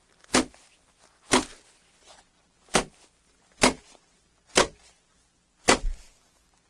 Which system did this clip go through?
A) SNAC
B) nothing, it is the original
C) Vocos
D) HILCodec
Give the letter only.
B